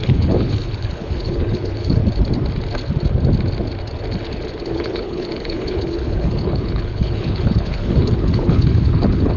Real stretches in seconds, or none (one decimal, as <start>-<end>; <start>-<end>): 2.0-4.6